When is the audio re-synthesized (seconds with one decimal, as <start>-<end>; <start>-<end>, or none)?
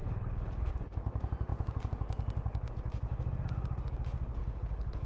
0.0-0.7; 4.4-5.1